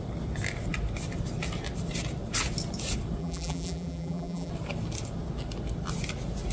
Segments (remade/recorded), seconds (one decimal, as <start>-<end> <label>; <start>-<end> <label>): 0.0-3.2 recorded; 3.2-4.5 remade; 4.5-6.5 recorded